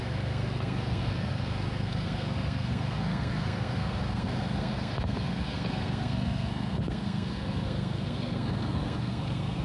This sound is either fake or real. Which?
fake